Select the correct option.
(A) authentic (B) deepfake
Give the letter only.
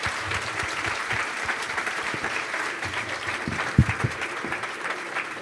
B